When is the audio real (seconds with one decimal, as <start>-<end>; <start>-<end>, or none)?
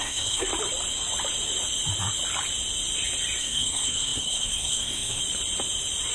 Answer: 0.5-3.4; 5.2-6.1